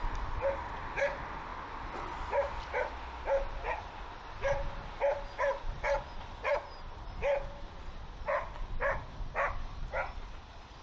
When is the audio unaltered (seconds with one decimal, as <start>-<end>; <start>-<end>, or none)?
0.0-10.8